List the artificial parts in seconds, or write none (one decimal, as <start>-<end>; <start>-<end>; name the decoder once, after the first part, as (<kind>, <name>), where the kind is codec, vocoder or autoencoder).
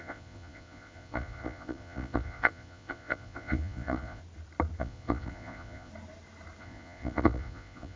0.0-4.2 (vocoder, Vocos); 4.8-5.9; 6.6-8.0